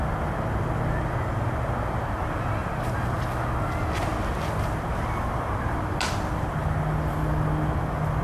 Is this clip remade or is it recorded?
recorded